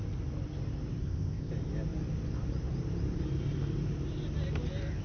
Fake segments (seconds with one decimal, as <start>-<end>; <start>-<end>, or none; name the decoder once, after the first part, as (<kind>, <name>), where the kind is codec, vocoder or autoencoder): 1.0-1.5 (codec, ZipCodec)